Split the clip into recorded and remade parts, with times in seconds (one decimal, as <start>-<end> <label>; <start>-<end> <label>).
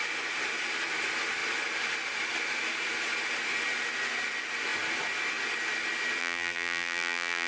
0.0-6.2 recorded; 6.2-7.5 remade